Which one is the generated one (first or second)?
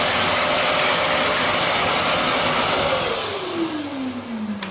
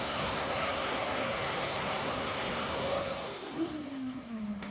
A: second